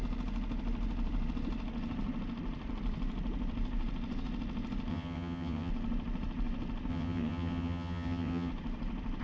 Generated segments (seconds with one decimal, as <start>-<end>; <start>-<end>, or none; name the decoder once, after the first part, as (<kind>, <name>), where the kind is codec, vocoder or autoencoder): 4.9-5.7 (vocoder, HiFi-GAN); 6.9-8.5

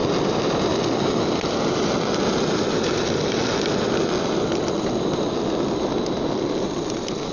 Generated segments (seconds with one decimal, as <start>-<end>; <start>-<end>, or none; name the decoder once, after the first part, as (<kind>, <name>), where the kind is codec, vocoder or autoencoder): none

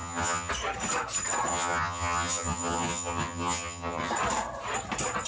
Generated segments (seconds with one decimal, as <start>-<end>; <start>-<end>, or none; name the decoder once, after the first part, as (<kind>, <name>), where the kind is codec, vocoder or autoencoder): 0.0-0.5 (vocoder, HiFi-GAN); 1.5-4.1